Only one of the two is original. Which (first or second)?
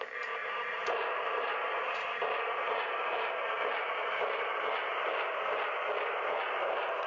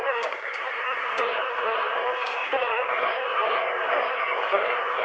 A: first